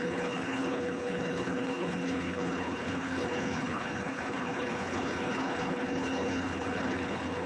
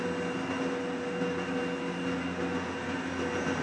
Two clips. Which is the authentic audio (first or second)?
second